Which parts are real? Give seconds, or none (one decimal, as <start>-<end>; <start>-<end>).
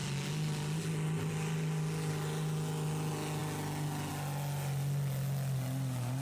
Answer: 0.0-6.2